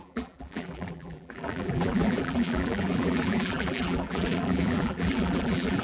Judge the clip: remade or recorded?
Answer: remade